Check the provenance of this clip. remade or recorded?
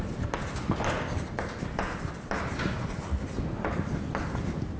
recorded